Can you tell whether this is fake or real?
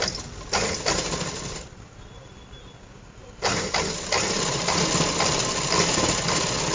real